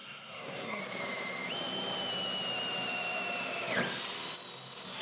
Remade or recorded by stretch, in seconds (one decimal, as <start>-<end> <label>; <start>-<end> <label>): 0.0-0.8 remade; 0.8-5.0 recorded

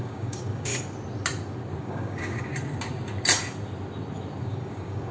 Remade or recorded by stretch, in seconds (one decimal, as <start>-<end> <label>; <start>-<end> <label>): 0.0-0.7 remade; 0.7-1.8 recorded; 1.8-2.5 remade; 2.5-4.4 recorded; 4.4-5.1 remade

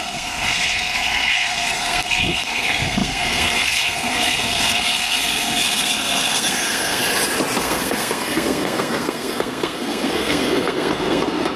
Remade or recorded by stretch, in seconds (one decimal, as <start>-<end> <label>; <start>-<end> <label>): 0.0-7.0 remade; 7.0-7.6 recorded; 7.6-11.6 remade

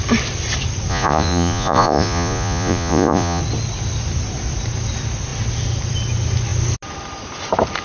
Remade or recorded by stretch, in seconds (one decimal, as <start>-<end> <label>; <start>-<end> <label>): 0.0-0.9 recorded; 0.9-3.4 remade; 3.4-7.8 recorded

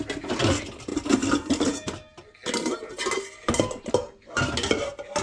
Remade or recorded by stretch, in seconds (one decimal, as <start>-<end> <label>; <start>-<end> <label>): 0.0-5.2 recorded

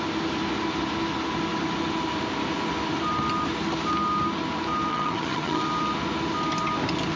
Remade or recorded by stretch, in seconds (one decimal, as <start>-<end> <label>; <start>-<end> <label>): 0.0-4.9 recorded; 4.9-5.6 remade; 5.6-7.2 recorded